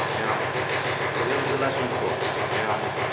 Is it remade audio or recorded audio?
recorded